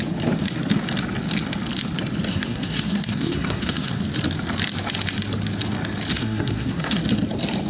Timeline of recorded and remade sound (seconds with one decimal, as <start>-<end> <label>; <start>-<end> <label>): 0.0-2.3 recorded; 2.3-4.0 remade; 4.0-6.1 recorded; 6.1-7.0 remade; 7.0-7.7 recorded

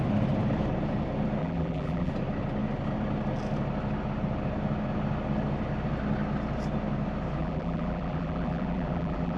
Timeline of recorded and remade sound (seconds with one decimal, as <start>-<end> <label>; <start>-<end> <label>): 0.0-1.4 recorded; 1.4-2.1 remade; 2.1-7.4 recorded; 7.4-9.4 remade